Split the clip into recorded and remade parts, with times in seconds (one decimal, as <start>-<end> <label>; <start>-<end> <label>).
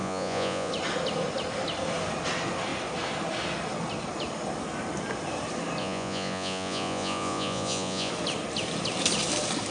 0.0-0.7 remade; 0.7-5.8 recorded; 5.8-8.1 remade; 8.1-9.7 recorded